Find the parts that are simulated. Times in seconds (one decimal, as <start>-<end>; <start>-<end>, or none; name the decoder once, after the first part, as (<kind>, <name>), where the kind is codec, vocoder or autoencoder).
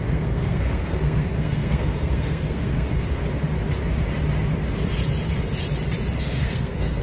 0.0-3.2 (codec, SNAC); 6.2-7.0